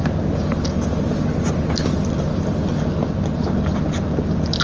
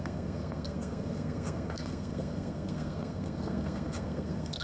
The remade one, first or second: second